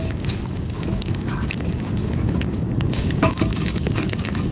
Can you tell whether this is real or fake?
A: fake